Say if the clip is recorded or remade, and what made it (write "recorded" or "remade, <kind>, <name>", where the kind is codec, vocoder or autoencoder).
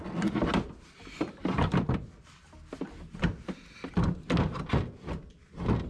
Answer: recorded